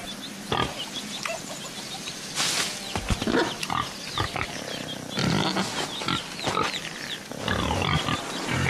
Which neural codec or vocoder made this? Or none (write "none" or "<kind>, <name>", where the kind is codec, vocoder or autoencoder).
none